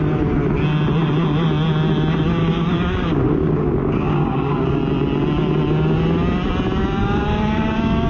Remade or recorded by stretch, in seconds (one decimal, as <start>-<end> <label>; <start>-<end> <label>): 0.0-2.4 recorded; 2.4-4.8 remade; 4.8-7.0 recorded; 7.0-8.1 remade